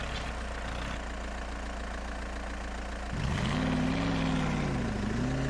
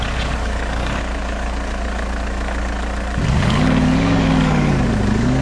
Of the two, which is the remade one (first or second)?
second